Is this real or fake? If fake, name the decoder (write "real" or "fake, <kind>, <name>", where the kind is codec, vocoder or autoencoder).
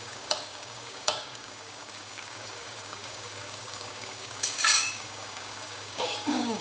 fake, codec, DAC